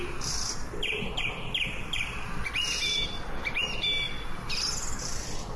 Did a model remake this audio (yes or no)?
no